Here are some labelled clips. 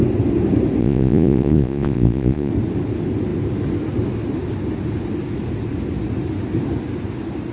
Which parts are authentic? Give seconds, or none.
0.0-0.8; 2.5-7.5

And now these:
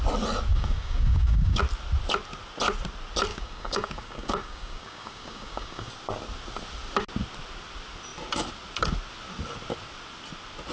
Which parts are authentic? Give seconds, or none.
0.0-0.5; 1.6-3.3; 5.9-10.7

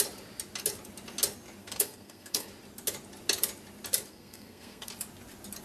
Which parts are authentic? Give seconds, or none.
0.0-1.6; 2.5-4.1; 4.9-5.6